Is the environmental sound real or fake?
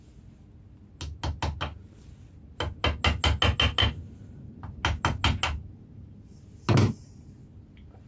real